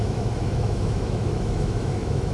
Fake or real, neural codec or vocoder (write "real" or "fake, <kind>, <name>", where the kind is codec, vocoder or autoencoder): fake, autoencoder, DAC-VAE